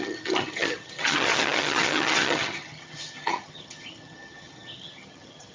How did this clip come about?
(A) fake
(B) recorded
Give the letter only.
A